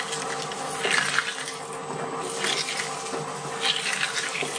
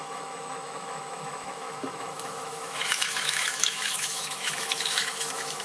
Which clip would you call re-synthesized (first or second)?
second